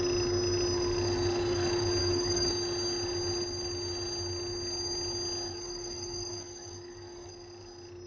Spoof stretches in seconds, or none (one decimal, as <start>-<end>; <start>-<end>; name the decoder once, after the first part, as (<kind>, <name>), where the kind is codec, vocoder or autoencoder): 2.0-2.5 (codec, DAC); 5.5-7.3